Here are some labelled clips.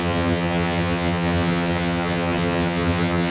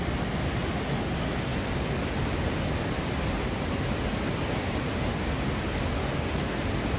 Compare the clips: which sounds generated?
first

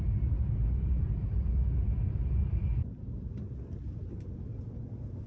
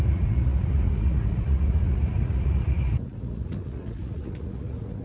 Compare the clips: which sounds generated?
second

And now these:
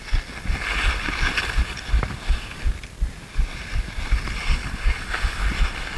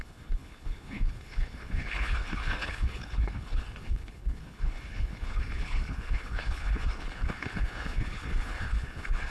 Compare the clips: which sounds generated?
second